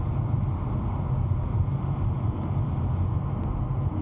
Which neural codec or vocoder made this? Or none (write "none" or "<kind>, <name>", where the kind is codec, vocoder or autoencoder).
none